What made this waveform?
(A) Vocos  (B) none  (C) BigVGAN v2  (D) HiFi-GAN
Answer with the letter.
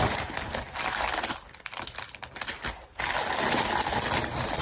C